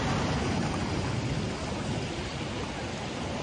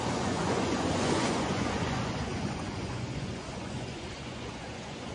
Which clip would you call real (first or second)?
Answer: first